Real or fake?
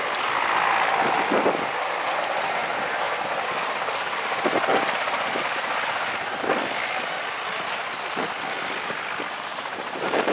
real